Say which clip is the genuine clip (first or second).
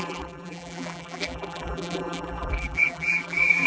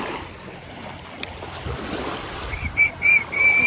second